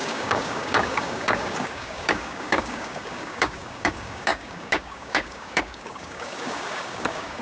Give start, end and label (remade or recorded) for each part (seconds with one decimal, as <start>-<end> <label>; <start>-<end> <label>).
0.0-7.4 remade